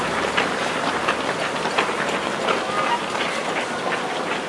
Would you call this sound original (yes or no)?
yes